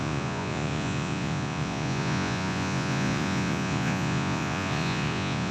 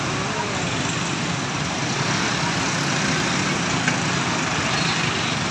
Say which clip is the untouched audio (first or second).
second